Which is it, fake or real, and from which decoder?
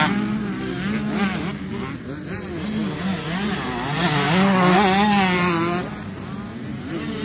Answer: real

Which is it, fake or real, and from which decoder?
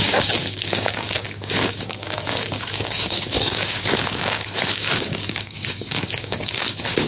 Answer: fake, codec, DAC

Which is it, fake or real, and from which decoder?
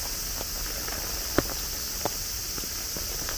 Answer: real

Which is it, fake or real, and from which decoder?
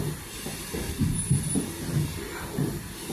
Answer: real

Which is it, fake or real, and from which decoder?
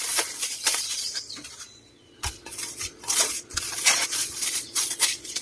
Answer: fake, vocoder, Vocos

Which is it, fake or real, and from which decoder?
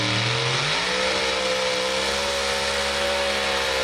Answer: real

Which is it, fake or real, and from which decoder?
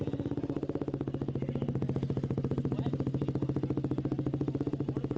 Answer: real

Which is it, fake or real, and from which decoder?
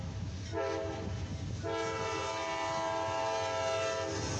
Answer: real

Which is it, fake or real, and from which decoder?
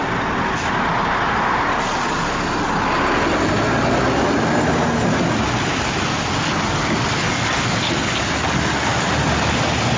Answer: real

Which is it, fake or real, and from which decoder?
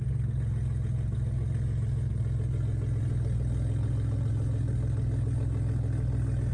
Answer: real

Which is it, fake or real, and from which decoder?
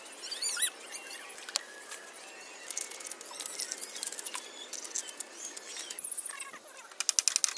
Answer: real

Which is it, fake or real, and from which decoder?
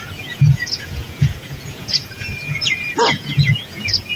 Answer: fake, vocoder, Vocos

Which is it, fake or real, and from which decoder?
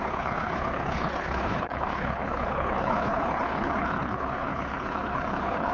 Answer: fake, codec, HILCodec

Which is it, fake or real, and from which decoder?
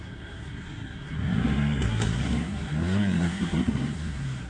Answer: fake, codec, SNAC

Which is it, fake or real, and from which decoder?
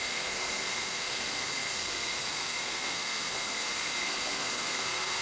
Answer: fake, codec, SNAC